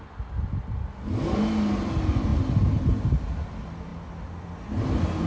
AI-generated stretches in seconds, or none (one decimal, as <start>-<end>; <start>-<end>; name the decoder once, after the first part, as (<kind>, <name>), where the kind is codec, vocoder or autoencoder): none